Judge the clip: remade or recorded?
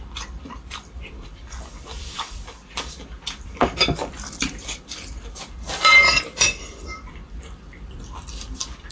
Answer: remade